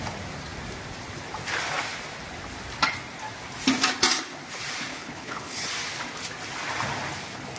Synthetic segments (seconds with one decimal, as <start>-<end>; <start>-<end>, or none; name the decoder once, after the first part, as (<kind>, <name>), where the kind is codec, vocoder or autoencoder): 4.9-5.7 (codec, HILCodec)